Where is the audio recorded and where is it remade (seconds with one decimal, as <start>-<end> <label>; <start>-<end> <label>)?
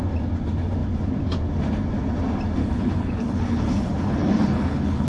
0.0-2.6 recorded; 2.6-5.1 remade